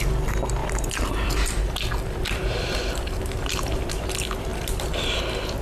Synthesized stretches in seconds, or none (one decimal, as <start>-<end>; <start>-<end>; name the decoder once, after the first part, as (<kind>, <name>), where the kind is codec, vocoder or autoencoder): 0.6-3.8 (vocoder, BigVGAN v2); 4.5-5.0